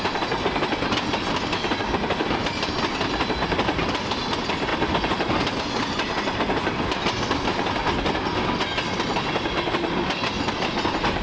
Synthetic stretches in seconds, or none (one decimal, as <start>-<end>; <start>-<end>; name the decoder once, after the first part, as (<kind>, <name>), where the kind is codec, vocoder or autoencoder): none